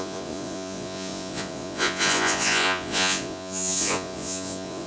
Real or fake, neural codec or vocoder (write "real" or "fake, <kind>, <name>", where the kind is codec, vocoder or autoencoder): fake, vocoder, Vocos